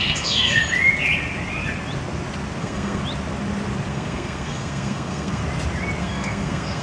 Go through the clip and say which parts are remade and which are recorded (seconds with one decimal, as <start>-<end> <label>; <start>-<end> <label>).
0.0-0.6 remade; 0.6-2.6 recorded; 2.6-3.0 remade; 3.0-3.9 recorded; 3.9-5.4 remade; 5.4-6.0 recorded; 6.0-6.8 remade